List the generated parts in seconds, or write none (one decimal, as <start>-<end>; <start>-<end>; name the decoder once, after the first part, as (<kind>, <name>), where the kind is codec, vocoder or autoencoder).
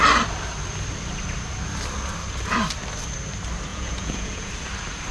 3.7-4.5 (vocoder, Vocos)